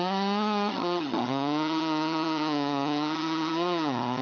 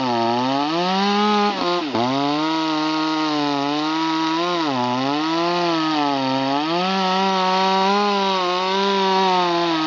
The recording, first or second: second